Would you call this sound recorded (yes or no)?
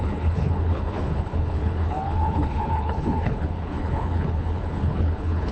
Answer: no